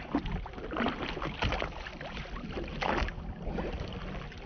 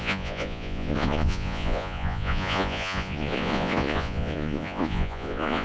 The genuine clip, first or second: first